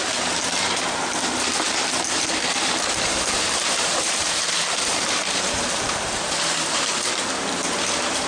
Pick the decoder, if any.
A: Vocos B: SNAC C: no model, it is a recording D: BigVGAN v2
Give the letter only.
D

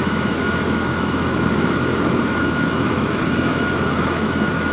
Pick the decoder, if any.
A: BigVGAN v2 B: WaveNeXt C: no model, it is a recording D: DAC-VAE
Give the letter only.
D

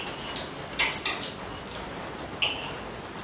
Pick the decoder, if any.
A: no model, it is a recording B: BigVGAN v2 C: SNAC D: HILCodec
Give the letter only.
A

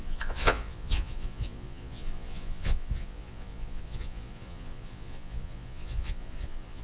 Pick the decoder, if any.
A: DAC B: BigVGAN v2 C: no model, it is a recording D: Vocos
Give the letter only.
D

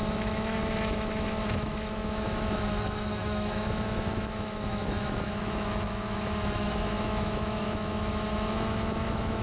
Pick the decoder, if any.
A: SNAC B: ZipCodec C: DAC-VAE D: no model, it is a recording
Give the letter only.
C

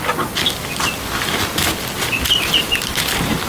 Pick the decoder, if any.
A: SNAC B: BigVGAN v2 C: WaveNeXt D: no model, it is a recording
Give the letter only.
D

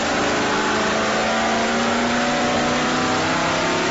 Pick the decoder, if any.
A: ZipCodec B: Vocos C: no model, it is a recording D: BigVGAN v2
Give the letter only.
C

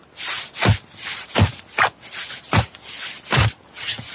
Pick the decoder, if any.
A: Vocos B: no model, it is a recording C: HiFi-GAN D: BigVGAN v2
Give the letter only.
B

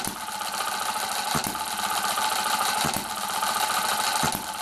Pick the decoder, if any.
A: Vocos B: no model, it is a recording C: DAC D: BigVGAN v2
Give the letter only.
B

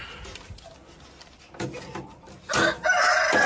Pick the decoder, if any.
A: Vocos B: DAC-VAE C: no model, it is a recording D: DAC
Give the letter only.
C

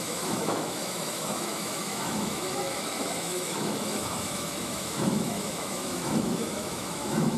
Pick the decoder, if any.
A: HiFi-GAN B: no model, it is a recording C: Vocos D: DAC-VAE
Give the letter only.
D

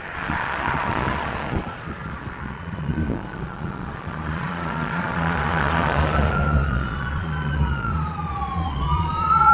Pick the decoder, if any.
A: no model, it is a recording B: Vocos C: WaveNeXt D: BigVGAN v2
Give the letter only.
B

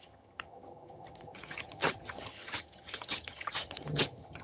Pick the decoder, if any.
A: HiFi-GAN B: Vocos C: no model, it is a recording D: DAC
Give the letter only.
A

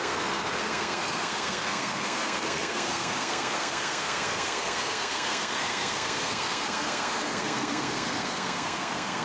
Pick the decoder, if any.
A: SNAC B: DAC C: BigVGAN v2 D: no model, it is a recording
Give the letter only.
A